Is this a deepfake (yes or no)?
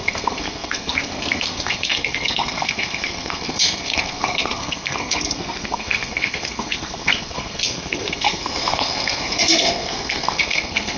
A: yes